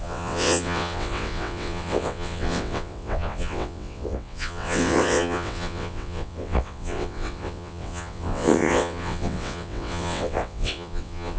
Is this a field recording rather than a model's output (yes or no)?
no